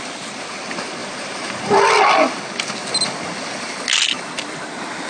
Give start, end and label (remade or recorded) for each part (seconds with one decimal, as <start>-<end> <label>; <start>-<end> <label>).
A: 0.0-1.0 recorded; 1.0-1.8 remade; 1.8-5.1 recorded